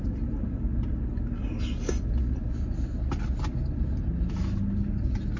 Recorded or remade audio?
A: recorded